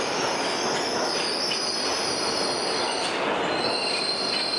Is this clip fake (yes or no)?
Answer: no